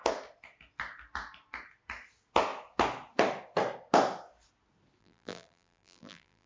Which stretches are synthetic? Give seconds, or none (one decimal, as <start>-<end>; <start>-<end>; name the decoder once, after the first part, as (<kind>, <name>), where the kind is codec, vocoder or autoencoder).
5.0-6.5 (vocoder, BigVGAN v2)